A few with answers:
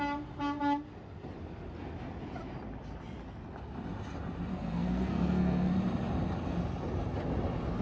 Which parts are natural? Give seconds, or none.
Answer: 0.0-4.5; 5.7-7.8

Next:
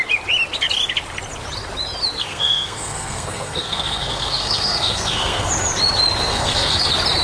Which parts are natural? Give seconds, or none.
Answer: 0.0-2.2; 5.5-6.2; 6.8-7.2

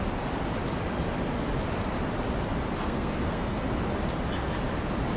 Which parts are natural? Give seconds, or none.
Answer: 0.0-2.8; 3.7-5.2

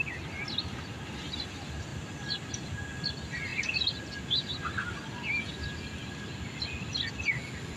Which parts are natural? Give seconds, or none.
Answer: 0.0-7.8

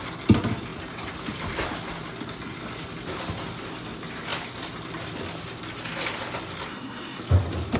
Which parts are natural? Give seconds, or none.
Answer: 0.0-6.7; 7.2-7.8

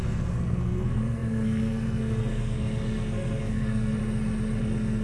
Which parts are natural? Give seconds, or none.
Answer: 4.0-4.6

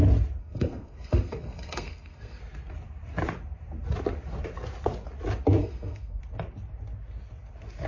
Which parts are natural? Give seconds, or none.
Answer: 0.0-0.4; 2.4-5.6; 6.2-7.9

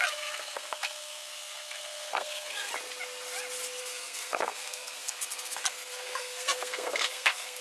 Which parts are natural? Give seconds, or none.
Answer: 2.7-3.8